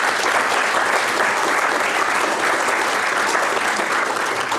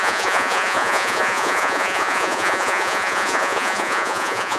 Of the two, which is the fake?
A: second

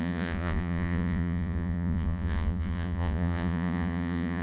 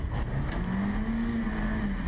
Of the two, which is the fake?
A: first